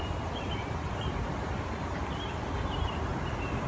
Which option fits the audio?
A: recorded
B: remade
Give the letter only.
A